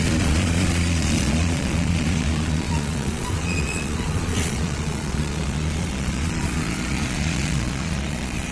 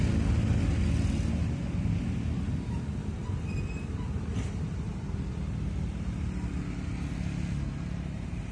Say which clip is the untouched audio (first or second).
second